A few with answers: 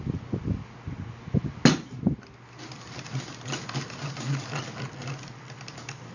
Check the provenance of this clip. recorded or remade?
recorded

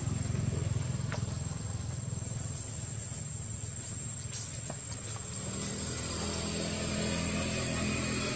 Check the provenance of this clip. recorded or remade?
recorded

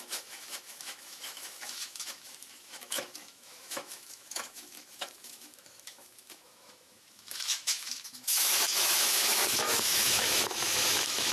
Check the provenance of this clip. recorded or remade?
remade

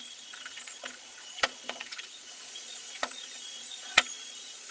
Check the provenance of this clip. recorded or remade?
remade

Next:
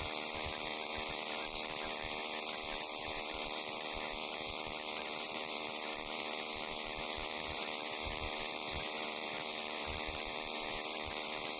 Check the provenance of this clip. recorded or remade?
remade